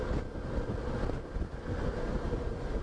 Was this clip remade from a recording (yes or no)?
no